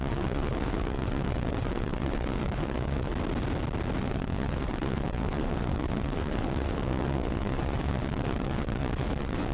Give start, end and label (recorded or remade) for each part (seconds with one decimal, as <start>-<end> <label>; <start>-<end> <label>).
0.0-3.1 remade; 3.1-4.0 recorded; 4.0-9.5 remade

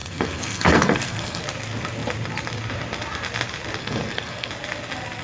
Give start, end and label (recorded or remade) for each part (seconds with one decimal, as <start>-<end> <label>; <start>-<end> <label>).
0.0-1.4 remade; 1.4-3.8 recorded; 3.8-4.5 remade; 4.5-5.2 recorded

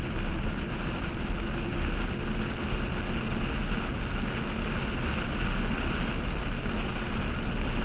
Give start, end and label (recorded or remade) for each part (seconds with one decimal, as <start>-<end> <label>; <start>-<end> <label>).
0.0-7.8 recorded

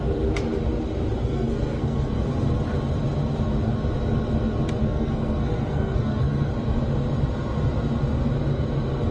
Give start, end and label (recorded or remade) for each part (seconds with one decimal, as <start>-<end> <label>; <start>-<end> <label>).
0.0-1.2 recorded; 1.2-2.2 remade; 2.2-4.8 recorded; 4.8-6.5 remade; 6.5-9.1 recorded

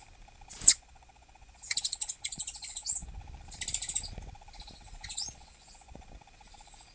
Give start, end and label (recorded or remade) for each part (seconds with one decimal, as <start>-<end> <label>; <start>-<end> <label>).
0.0-0.7 recorded; 0.7-3.2 remade; 3.2-4.9 recorded; 4.9-6.1 remade; 6.1-6.9 recorded

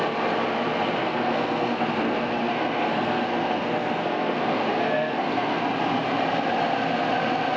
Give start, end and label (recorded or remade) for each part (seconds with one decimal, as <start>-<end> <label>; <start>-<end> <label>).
0.0-1.0 recorded; 1.0-5.6 remade; 5.6-7.6 recorded

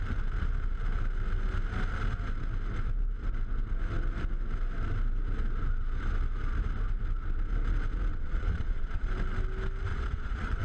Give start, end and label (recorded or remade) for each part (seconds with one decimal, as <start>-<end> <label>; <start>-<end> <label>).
0.0-8.1 recorded; 8.1-9.1 remade; 9.1-9.9 recorded; 9.9-10.6 remade

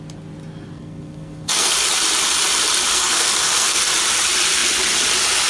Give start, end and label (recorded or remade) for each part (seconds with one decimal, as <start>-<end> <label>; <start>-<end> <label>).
0.0-0.7 recorded; 0.7-1.7 remade; 1.7-2.9 recorded; 2.9-3.8 remade; 3.8-5.5 recorded